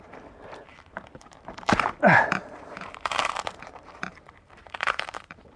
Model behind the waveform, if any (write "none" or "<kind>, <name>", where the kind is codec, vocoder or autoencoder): vocoder, BigVGAN v2